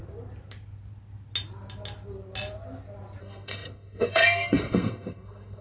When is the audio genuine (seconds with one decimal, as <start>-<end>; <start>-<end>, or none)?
0.0-3.2